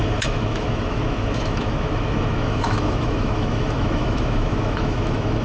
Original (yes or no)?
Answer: no